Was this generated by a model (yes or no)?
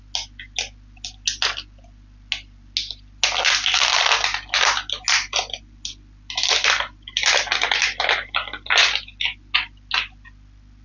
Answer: no